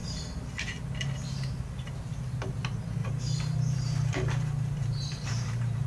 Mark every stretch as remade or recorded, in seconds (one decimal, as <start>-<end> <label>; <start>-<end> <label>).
0.0-1.9 remade; 1.9-3.0 recorded; 3.0-5.9 remade